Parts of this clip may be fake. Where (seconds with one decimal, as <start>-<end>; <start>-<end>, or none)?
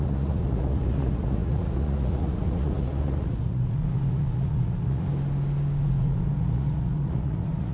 0.0-5.1; 5.8-7.7